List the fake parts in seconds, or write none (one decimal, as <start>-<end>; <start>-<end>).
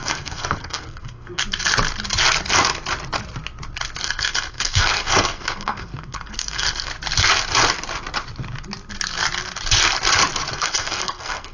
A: 0.0-1.4; 4.0-6.9; 10.5-11.5